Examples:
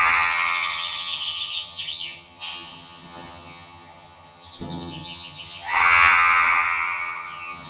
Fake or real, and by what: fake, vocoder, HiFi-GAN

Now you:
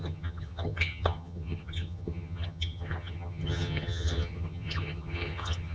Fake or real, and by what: fake, vocoder, HiFi-GAN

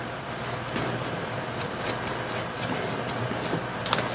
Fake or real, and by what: real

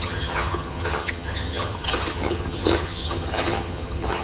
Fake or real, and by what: fake, vocoder, HiFi-GAN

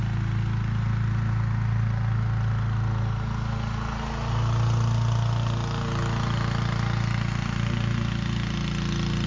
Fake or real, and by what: real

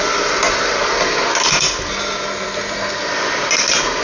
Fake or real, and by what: real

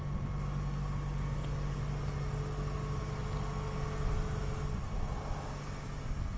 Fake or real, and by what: real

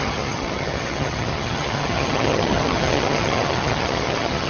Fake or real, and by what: fake, vocoder, HiFi-GAN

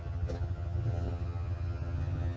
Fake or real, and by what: fake, vocoder, HiFi-GAN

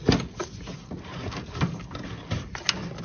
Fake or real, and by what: real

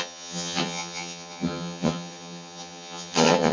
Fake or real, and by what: fake, vocoder, HiFi-GAN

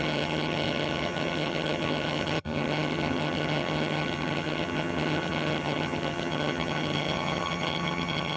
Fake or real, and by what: fake, vocoder, HiFi-GAN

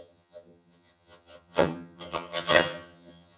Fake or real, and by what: fake, vocoder, HiFi-GAN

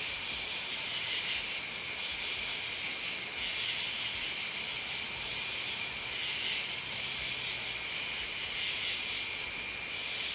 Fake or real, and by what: real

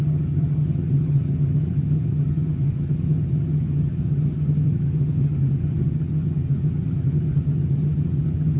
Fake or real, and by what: fake, vocoder, HiFi-GAN